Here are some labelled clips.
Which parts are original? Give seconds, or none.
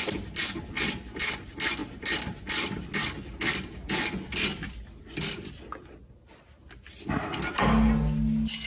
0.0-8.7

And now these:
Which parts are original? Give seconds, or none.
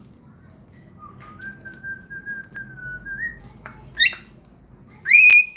0.0-5.6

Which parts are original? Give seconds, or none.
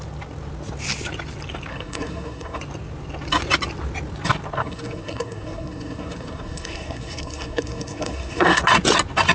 0.0-1.7; 2.6-4.6; 8.6-9.3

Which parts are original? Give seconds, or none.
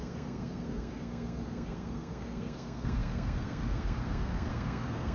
none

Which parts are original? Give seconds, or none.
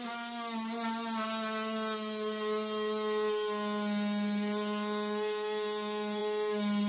0.0-6.9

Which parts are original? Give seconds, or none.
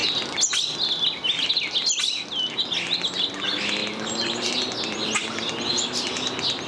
0.0-6.7